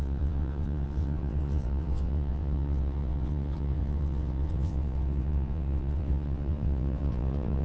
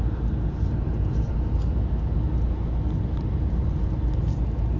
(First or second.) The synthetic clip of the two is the first